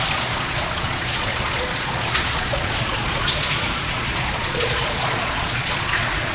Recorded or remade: remade